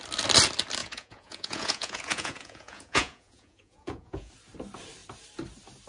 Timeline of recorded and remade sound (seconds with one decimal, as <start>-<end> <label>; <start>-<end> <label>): 0.0-0.8 recorded; 0.8-4.3 remade; 4.3-5.9 recorded